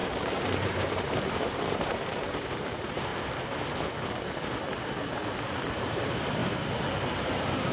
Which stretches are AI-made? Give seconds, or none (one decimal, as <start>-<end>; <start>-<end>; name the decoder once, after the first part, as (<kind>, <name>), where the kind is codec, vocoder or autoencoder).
0.0-3.1 (vocoder, BigVGAN v2); 5.4-6.4; 6.9-7.7